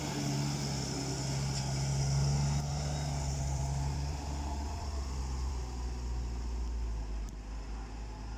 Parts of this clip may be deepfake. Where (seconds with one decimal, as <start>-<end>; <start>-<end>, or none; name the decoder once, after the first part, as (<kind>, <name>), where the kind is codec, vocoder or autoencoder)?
2.7-5.5 (vocoder, BigVGAN v2)